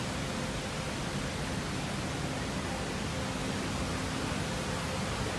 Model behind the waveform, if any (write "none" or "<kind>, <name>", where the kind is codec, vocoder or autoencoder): none